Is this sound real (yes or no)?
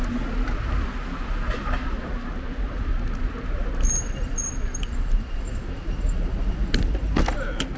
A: yes